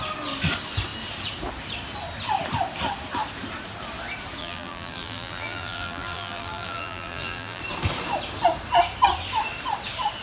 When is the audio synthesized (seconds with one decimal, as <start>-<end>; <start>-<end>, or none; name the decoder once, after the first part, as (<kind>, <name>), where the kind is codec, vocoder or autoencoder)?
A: 4.4-7.6 (vocoder, BigVGAN v2)